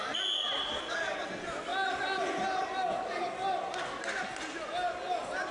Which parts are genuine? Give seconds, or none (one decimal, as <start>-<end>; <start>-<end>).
0.0-5.5